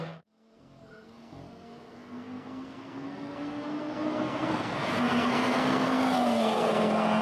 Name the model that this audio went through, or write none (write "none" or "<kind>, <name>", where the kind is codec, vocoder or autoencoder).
codec, SNAC